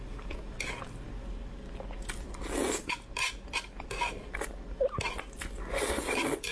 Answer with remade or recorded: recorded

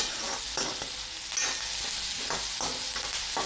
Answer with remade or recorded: recorded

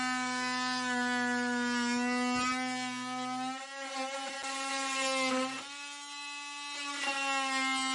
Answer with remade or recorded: recorded